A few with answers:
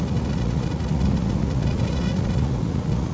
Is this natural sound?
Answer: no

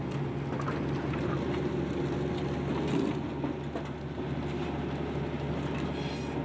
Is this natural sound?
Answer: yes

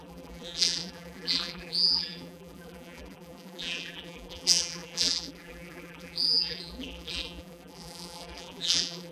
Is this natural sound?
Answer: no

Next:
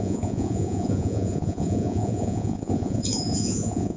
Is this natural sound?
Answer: no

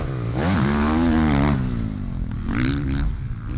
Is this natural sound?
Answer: yes